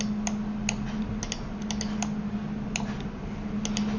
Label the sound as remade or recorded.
recorded